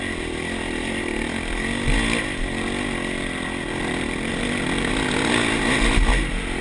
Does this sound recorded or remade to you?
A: recorded